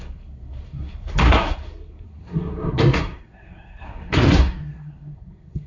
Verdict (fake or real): fake